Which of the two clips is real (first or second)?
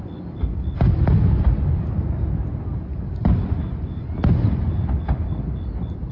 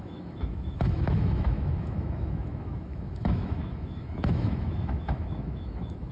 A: first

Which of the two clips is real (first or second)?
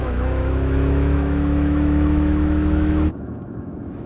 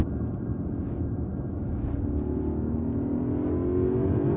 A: second